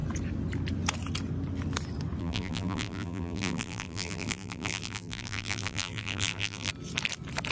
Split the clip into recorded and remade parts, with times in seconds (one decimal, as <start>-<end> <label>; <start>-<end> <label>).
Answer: 0.0-2.2 recorded; 2.2-6.7 remade; 6.7-7.5 recorded